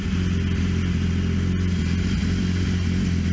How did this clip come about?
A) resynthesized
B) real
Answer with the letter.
B